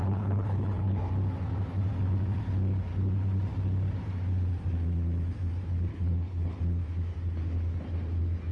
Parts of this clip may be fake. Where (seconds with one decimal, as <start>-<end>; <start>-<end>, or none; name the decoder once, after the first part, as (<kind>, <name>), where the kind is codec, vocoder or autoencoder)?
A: 0.0-1.1 (codec, HILCodec); 5.9-6.6